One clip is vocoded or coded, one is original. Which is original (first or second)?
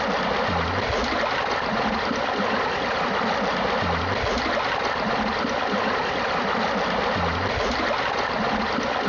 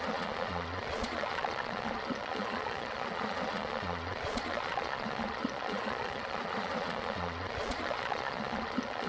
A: first